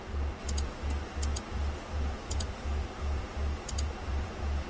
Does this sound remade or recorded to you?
recorded